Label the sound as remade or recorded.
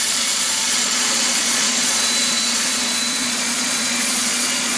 remade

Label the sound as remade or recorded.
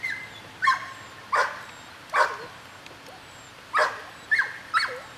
recorded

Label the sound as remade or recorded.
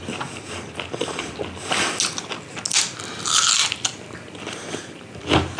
recorded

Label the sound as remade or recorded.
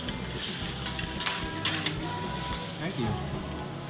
recorded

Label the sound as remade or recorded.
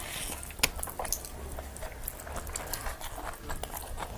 recorded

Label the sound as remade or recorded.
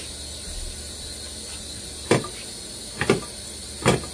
recorded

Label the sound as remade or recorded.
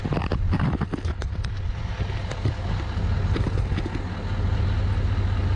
recorded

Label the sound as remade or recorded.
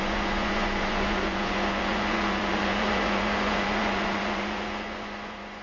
remade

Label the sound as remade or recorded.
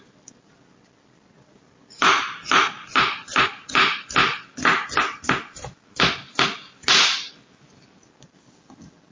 recorded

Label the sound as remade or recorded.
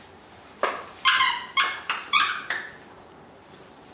remade